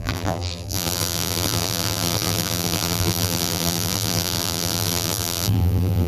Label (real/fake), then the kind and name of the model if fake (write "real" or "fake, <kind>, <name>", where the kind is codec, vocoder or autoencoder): fake, vocoder, BigVGAN v2